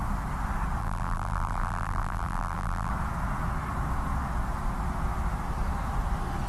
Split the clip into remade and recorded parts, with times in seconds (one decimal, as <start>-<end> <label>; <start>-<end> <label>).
0.0-0.8 recorded; 0.8-2.9 remade; 2.9-6.5 recorded